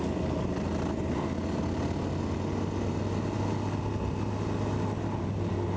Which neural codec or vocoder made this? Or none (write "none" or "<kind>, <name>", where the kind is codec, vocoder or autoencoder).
none